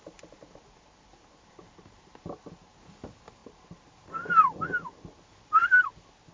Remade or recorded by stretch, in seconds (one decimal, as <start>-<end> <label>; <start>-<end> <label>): 0.0-6.3 recorded